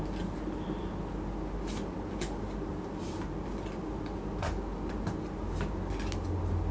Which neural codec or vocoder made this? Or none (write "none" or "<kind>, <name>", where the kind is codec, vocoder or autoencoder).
none